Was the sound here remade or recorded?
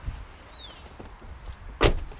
recorded